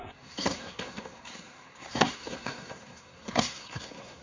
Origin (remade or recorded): remade